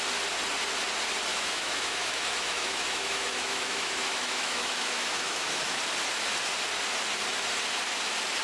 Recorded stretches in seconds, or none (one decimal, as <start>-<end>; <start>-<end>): 0.0-1.3; 5.8-8.4